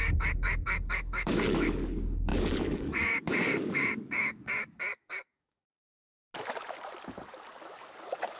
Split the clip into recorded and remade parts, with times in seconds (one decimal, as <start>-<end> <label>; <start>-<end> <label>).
0.0-5.7 remade; 5.7-7.6 recorded; 7.6-8.4 remade